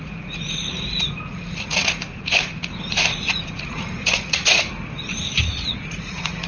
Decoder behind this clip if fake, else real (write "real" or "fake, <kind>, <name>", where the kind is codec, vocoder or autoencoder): fake, vocoder, Vocos